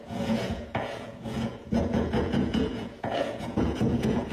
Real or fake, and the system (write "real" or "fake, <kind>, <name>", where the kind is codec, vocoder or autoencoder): fake, vocoder, Vocos